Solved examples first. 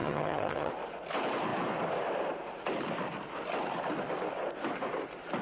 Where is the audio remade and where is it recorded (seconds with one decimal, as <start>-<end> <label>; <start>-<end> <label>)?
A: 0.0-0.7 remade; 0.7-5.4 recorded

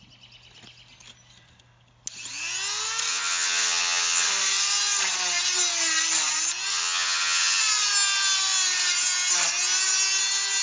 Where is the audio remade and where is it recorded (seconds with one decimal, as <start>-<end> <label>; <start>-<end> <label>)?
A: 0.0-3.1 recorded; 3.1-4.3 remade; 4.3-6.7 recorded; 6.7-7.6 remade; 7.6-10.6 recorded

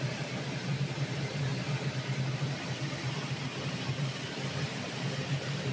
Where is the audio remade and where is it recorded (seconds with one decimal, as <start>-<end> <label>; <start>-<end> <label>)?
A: 0.0-5.7 recorded